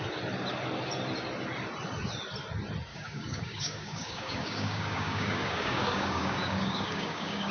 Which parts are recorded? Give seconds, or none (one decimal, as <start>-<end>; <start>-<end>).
0.0-2.9